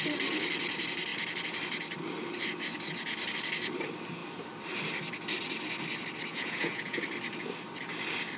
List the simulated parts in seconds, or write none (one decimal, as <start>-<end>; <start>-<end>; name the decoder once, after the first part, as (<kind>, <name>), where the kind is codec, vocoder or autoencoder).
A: 6.3-7.0 (vocoder, Vocos)

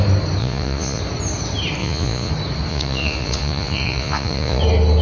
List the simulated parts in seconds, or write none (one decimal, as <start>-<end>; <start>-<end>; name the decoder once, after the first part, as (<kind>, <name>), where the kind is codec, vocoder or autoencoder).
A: 0.4-1.0 (vocoder, Vocos); 1.8-2.3; 2.7-4.6

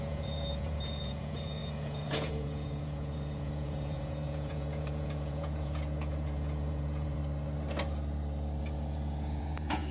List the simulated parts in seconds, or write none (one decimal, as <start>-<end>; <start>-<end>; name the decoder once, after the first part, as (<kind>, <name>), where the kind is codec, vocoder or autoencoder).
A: 0.0-7.2 (vocoder, Vocos); 8.6-9.9

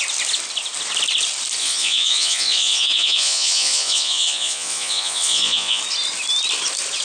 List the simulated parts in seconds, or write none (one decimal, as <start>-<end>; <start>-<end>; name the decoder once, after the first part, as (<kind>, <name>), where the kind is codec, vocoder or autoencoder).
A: 1.6-5.8 (vocoder, Vocos)

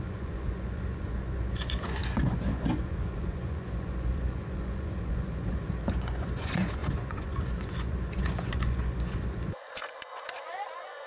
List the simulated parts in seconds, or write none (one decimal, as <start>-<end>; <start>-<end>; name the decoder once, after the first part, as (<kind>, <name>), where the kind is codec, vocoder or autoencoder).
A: 0.0-11.1 (vocoder, Vocos)

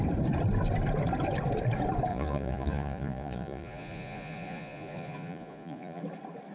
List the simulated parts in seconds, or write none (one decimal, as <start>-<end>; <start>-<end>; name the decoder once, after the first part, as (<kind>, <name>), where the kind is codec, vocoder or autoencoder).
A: 2.1-6.0 (vocoder, Vocos)

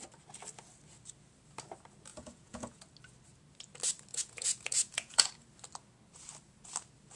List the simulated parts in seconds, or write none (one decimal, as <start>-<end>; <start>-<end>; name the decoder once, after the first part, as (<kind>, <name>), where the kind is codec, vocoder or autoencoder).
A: 2.1-2.8 (vocoder, Vocos); 4.1-5.3

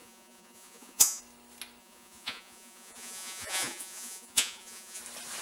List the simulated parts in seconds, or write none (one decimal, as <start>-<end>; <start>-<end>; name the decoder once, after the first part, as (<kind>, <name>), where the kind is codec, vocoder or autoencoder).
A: 0.0-1.2 (vocoder, Vocos); 1.8-5.0